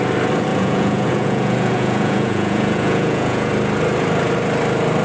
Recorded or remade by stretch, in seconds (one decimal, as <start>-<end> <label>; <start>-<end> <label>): 0.0-0.5 recorded; 0.5-3.5 remade; 3.5-5.0 recorded